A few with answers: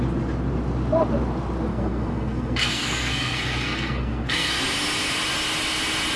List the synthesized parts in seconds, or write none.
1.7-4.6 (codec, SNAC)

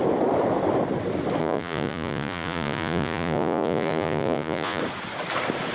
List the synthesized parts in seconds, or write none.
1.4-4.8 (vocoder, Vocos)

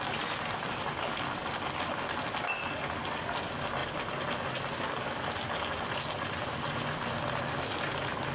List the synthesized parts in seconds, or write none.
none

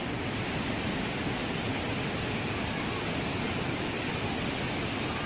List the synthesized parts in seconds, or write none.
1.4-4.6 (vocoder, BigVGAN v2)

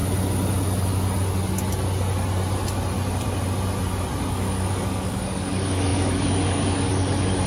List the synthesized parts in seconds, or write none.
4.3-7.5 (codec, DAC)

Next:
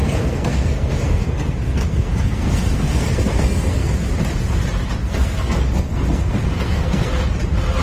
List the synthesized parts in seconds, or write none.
0.0-3.9 (codec, SNAC); 5.0-7.1

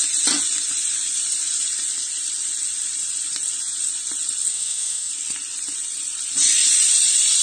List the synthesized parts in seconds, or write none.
4.5-5.1 (autoencoder, DAC-VAE)